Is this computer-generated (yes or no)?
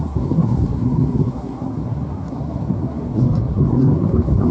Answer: yes